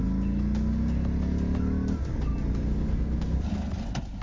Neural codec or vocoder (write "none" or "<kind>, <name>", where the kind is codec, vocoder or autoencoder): none